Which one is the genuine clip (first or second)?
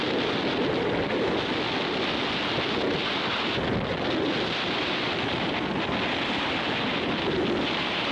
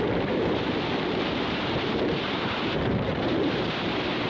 first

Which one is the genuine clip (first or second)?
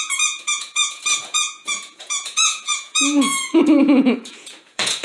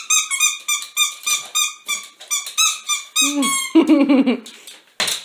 second